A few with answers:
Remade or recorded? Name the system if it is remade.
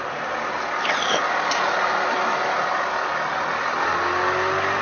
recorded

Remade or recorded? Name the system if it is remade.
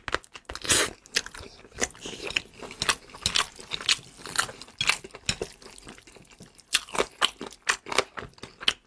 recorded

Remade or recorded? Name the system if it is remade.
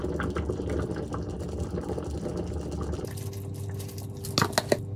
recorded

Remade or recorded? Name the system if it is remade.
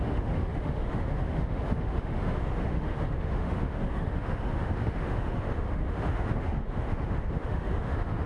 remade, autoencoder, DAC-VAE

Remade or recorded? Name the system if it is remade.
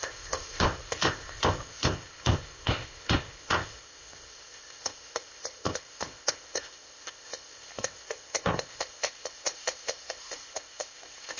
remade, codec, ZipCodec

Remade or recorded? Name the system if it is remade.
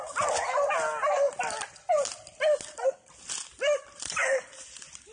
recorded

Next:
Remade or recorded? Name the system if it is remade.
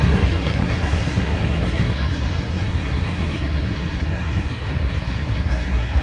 remade, codec, SNAC